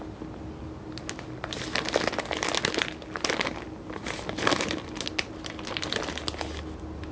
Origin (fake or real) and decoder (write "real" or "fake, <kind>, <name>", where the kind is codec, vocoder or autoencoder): real